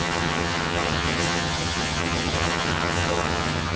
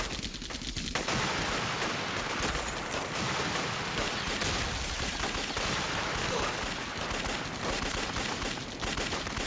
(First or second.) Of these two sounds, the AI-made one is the first